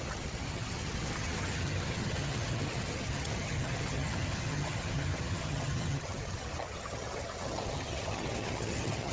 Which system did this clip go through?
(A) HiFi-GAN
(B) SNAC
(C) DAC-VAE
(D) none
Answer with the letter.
A